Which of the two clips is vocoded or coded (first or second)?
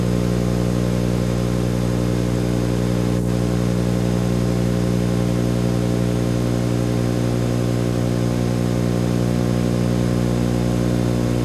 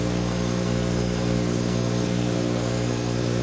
second